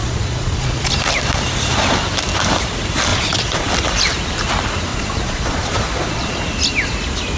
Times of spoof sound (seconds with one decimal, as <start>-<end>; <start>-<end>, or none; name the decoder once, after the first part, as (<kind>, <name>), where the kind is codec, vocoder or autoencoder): 0.0-0.9 (vocoder, Vocos); 3.1-3.7; 4.9-6.3